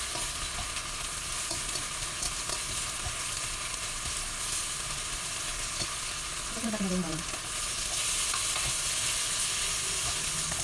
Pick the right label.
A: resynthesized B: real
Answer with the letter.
B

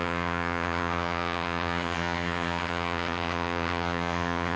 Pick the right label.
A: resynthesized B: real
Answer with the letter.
A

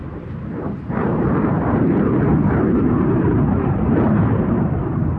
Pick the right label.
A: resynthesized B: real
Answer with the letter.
A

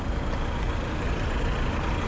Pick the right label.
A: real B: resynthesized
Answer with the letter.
A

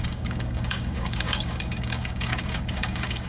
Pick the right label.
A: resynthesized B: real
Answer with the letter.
A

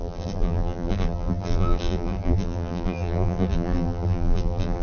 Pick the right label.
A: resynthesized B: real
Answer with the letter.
A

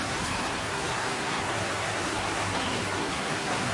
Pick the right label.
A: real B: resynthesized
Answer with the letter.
B